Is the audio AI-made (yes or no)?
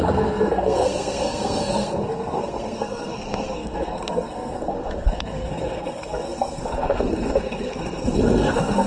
yes